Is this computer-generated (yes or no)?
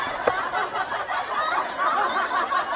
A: no